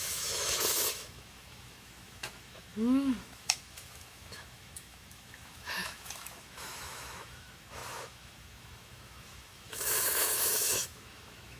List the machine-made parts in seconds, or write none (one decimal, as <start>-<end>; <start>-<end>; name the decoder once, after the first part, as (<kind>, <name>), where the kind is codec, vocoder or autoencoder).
0.0-11.6 (autoencoder, DAC-VAE)